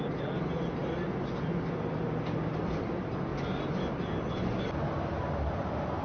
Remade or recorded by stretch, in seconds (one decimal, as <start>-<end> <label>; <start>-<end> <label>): 0.0-6.0 recorded